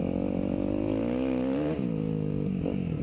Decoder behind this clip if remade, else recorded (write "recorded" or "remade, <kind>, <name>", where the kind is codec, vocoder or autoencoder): recorded